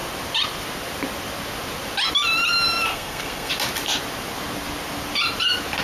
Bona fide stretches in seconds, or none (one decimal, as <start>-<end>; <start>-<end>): 0.0-2.9; 3.5-5.8